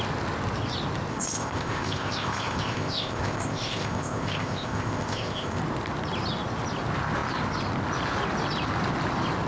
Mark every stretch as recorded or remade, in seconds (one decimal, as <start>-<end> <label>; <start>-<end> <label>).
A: 0.0-1.1 recorded; 1.1-5.6 remade; 5.6-9.5 recorded